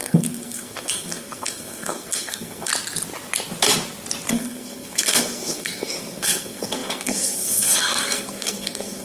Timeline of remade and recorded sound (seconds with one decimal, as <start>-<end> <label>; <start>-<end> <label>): 0.0-2.7 remade; 2.7-4.3 recorded; 4.3-9.0 remade